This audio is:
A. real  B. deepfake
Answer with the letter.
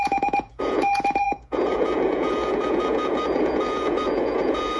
B